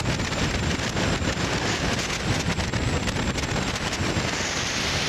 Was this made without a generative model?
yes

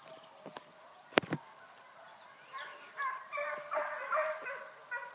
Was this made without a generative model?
yes